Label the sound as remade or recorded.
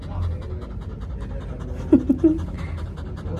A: recorded